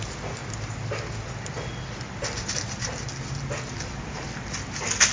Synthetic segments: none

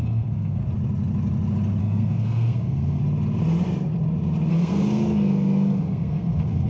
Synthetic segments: 0.0-0.6 (codec, SNAC); 1.8-3.0; 4.5-6.7

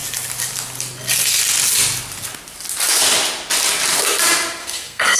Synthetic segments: 4.6-5.2 (codec, SNAC)

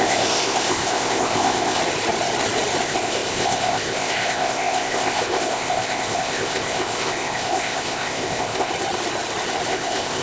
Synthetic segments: 0.0-1.8 (codec, ZipCodec); 2.8-8.7; 9.7-10.2

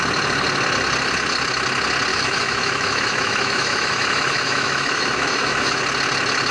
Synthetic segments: 2.1-5.8 (autoencoder, DAC-VAE)

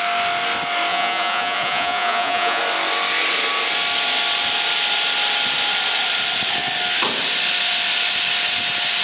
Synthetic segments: 0.9-2.6 (vocoder, Vocos)

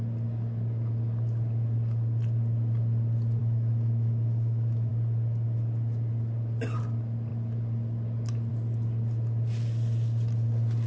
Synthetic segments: 3.4-4.9 (autoencoder, DAC-VAE)

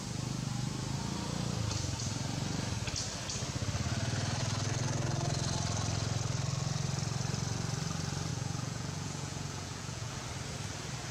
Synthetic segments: 8.3-10.1 (vocoder, Vocos)